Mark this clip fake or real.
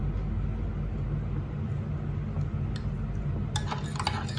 real